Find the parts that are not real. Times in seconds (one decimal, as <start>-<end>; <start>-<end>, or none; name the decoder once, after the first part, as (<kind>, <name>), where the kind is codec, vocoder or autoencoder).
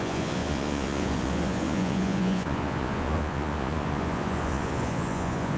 0.0-5.6 (vocoder, Vocos)